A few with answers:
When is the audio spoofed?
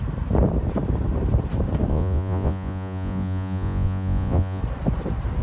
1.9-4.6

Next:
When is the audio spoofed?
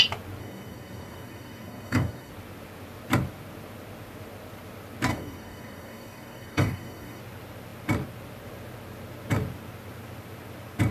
0.4-2.3; 5.1-7.2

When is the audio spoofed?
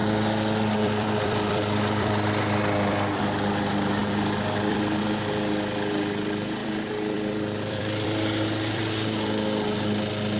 0.0-3.2; 4.0-5.0; 6.6-8.8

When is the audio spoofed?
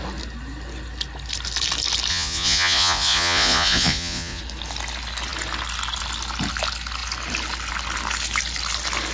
2.1-4.4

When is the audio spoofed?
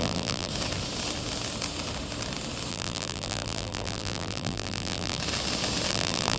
0.0-0.5; 2.7-5.2; 5.9-6.4